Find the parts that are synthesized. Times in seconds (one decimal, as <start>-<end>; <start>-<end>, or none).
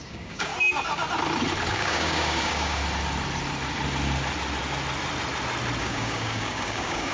0.0-0.5; 1.7-2.8; 5.8-7.1